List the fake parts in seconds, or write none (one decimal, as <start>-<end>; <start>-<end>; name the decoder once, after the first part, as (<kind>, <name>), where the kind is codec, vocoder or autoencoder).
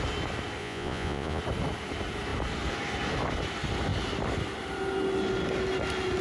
0.6-1.4 (vocoder, Vocos)